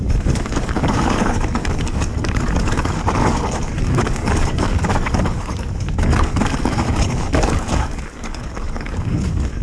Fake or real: fake